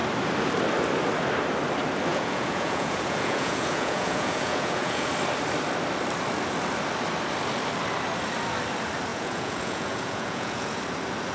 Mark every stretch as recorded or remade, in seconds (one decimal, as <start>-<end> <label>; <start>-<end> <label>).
0.0-2.1 recorded; 2.1-5.1 remade; 5.1-9.1 recorded; 9.1-10.8 remade; 10.8-11.3 recorded